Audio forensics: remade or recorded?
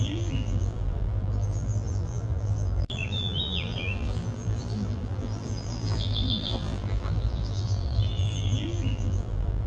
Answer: remade